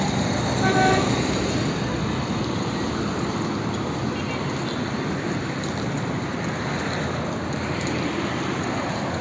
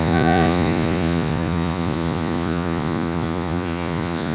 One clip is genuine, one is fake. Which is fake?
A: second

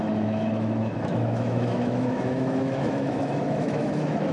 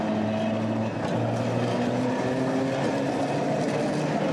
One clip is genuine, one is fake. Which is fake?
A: first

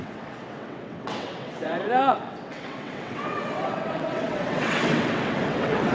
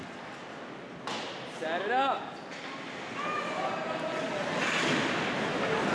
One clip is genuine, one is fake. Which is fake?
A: first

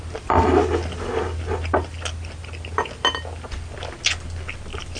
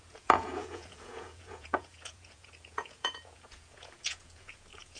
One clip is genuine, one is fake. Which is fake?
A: second